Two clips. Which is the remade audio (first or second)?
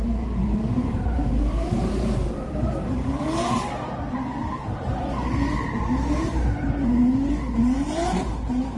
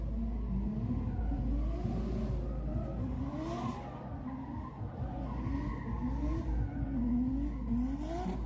first